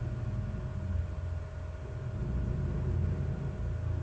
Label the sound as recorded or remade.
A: recorded